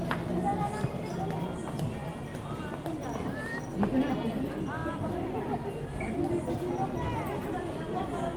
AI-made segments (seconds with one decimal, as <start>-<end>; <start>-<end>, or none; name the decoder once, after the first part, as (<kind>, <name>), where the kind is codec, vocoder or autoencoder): none